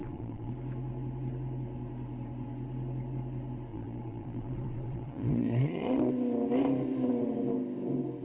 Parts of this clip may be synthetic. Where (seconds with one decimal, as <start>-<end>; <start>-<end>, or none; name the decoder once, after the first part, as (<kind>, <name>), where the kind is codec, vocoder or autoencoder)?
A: 0.0-0.5 (vocoder, Vocos); 3.7-6.1